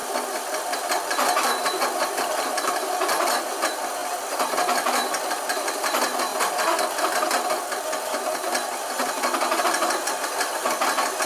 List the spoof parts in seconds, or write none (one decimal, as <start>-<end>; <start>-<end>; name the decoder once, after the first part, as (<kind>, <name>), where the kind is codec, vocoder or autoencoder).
0.0-3.5 (vocoder, BigVGAN v2); 4.0-5.2